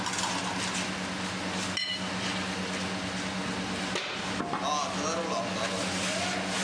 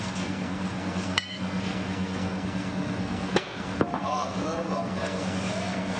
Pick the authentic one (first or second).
first